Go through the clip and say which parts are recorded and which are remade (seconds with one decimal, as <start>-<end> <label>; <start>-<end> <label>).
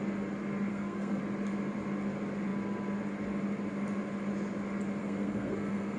0.0-0.7 recorded; 0.7-1.2 remade; 1.2-5.0 recorded; 5.0-6.0 remade